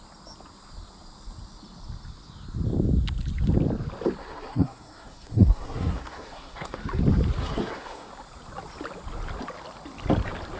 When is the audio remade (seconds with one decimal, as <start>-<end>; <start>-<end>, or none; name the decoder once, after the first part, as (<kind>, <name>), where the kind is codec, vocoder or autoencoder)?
4.2-6.8 (codec, SNAC); 7.4-8.1